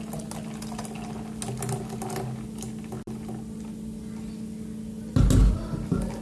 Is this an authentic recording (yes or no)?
yes